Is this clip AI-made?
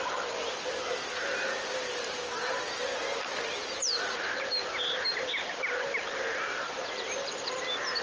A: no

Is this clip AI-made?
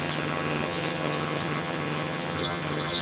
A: yes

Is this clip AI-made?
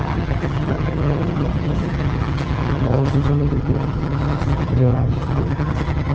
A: yes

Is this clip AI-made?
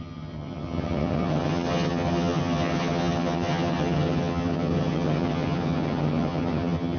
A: yes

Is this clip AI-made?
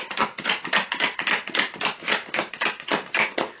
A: no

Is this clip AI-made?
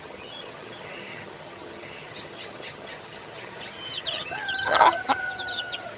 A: yes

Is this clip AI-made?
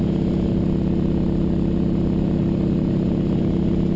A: no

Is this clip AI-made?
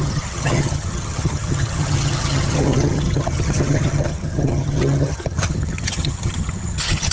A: yes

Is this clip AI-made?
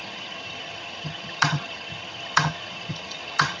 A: yes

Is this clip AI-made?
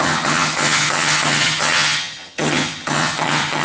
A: yes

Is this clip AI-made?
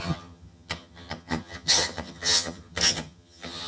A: yes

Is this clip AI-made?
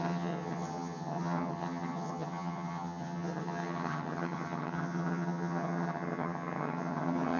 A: yes